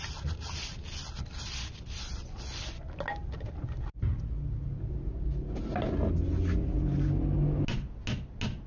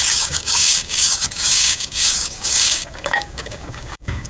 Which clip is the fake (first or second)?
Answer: second